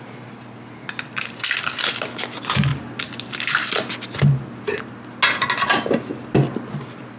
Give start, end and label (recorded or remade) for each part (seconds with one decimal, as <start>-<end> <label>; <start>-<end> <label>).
0.0-7.2 recorded